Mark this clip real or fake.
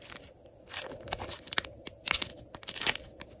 real